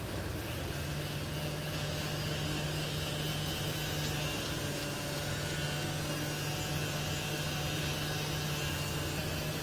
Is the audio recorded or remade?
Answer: recorded